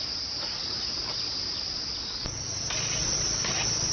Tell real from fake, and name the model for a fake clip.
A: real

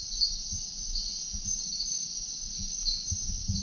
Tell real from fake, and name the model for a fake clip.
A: real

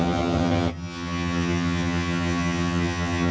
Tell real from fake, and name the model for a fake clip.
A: fake, vocoder, HiFi-GAN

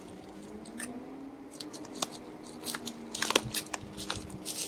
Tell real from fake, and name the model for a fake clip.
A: real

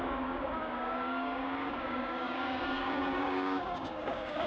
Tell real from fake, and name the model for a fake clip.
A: fake, codec, DAC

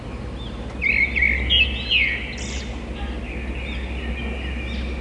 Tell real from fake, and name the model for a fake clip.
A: real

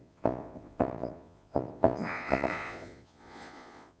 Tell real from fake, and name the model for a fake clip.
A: fake, vocoder, Vocos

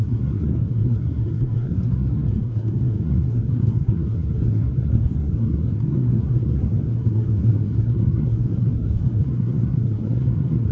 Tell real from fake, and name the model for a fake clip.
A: fake, codec, SNAC